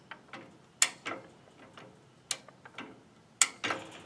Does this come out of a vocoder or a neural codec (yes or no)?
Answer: no